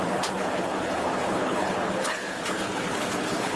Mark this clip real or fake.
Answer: fake